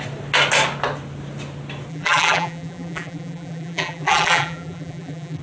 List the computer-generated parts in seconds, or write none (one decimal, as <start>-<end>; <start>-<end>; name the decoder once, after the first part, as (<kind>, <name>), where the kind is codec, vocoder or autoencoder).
1.9-5.4 (vocoder, BigVGAN v2)